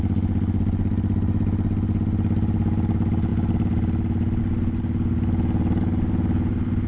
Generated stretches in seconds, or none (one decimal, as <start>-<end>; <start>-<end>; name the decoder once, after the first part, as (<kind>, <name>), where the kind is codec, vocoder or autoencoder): none